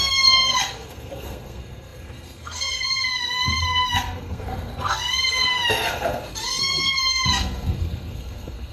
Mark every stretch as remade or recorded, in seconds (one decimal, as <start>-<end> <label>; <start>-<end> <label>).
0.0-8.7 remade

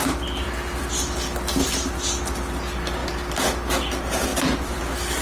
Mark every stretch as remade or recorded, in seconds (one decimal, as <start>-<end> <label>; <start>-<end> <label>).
0.0-4.3 recorded; 4.3-4.8 remade; 4.8-5.2 recorded

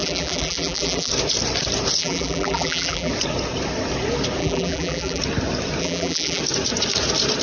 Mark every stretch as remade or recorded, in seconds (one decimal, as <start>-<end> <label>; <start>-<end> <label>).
0.0-1.1 remade; 1.1-2.0 recorded; 2.0-3.1 remade; 3.1-4.4 recorded; 4.4-5.2 remade; 5.2-5.8 recorded; 5.8-6.4 remade; 6.4-7.4 recorded

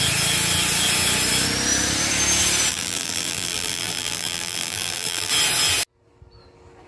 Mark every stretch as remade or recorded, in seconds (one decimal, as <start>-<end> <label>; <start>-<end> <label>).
0.0-2.7 recorded; 2.7-5.3 remade; 5.3-6.9 recorded